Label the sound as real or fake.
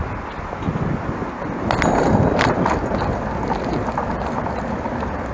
real